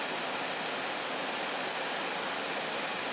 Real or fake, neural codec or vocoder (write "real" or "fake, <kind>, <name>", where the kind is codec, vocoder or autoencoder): real